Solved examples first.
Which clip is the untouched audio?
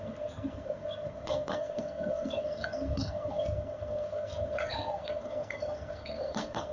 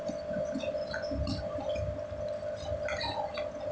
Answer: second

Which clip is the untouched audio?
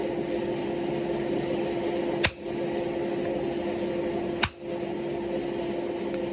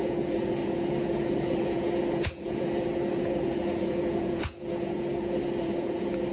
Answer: first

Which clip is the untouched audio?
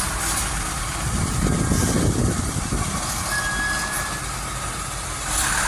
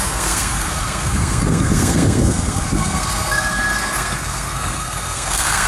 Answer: first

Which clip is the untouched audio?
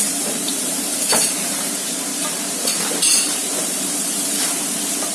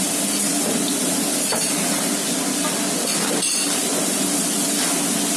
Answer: second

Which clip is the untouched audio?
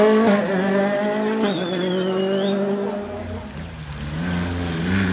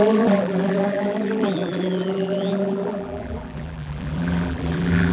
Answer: first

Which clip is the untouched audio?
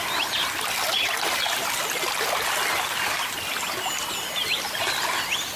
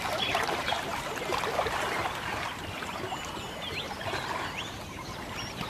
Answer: first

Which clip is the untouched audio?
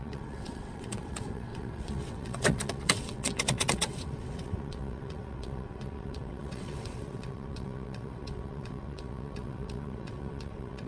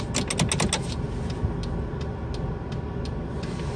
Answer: second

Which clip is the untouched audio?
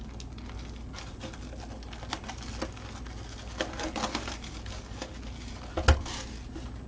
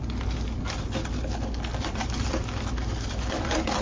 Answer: first